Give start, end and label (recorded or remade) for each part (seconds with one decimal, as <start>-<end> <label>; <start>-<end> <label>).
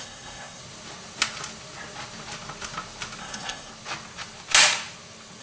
0.0-0.6 remade; 0.6-3.2 recorded; 3.2-3.7 remade; 3.7-5.4 recorded